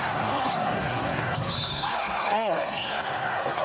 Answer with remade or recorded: remade